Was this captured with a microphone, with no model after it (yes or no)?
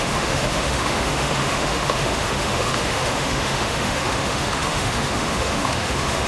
no